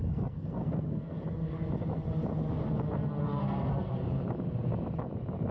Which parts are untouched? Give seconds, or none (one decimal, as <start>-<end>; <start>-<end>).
1.2-3.2; 3.9-5.5